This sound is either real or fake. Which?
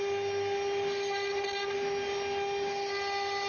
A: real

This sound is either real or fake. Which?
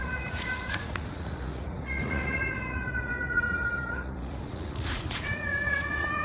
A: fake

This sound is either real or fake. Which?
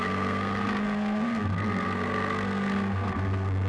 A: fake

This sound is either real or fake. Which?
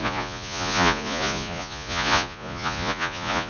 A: fake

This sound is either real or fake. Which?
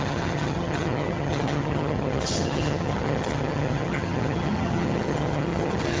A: fake